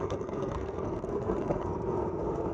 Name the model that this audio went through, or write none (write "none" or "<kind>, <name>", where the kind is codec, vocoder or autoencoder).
codec, SNAC